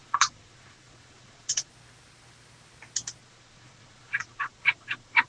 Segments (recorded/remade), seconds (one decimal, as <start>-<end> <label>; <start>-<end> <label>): 0.0-1.7 remade; 1.7-3.2 recorded; 3.2-5.3 remade